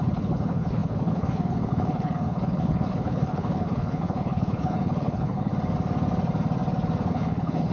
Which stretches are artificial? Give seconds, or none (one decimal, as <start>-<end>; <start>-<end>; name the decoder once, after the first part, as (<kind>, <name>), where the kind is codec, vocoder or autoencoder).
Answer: 0.0-5.5 (codec, HILCodec); 7.1-7.7